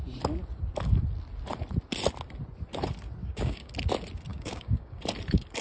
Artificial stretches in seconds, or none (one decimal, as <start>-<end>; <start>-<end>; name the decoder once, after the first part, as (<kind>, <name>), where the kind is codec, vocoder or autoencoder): 3.2-3.7 (codec, DAC); 4.3-5.0